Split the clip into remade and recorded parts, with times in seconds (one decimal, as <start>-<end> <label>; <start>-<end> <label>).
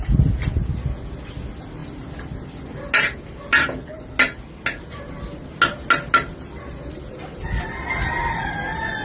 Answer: 0.0-9.0 recorded